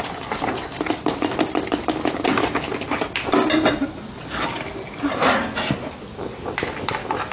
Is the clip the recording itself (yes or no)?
yes